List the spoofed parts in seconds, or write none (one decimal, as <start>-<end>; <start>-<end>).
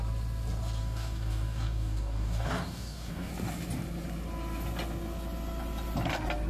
0.8-3.3